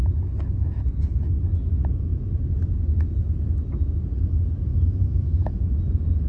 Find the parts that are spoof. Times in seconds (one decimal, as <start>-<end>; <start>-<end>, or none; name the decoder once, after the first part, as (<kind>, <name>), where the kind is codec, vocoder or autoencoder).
4.7-5.4 (autoencoder, DAC-VAE)